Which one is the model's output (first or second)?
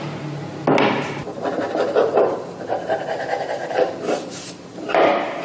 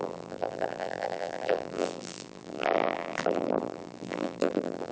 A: second